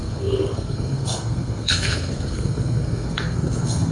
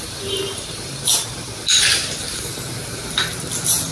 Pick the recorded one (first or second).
second